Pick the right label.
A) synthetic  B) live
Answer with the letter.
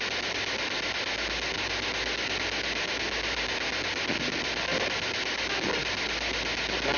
B